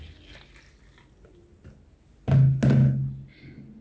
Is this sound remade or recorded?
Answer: recorded